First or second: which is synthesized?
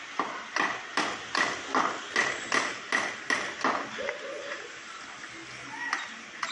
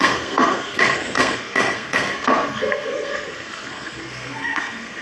second